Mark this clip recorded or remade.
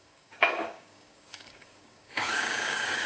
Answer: remade